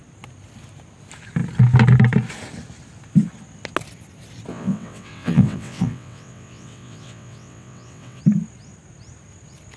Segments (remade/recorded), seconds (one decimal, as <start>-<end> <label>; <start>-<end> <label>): 0.0-4.5 recorded; 4.5-8.2 remade; 8.2-9.8 recorded